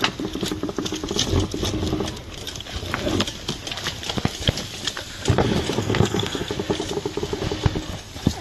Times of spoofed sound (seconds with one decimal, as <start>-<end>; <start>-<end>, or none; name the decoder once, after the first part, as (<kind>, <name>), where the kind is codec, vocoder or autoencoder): 5.8-6.5 (codec, SNAC)